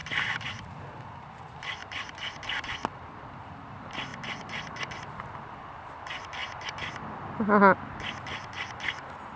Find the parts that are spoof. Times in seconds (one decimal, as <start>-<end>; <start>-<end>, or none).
none